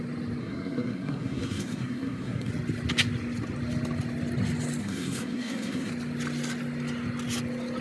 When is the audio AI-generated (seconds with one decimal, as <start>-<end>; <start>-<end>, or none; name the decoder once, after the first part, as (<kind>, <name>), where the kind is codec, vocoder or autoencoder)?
0.4-2.5 (codec, SNAC); 4.8-5.9